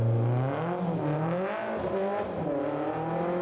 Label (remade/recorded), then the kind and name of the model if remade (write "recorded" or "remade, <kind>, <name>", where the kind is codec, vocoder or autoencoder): recorded